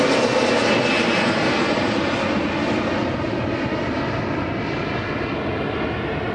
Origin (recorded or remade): recorded